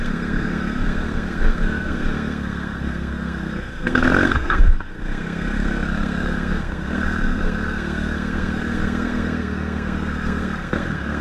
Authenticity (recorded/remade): remade